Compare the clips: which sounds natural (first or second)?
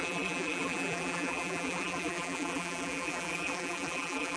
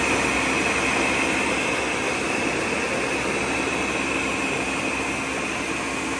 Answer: second